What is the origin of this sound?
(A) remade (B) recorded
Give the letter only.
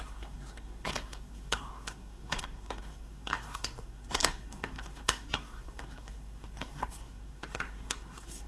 A